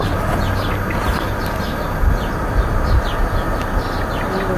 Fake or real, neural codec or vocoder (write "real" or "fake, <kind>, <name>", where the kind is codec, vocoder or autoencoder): real